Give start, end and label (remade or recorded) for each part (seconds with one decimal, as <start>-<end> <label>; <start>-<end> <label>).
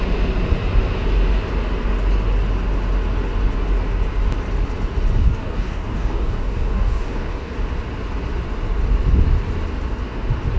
0.0-5.2 recorded; 5.2-7.5 remade; 7.5-10.6 recorded